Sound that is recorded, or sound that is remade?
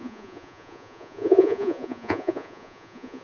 remade